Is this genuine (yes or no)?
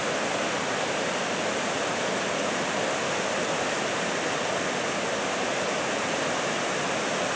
yes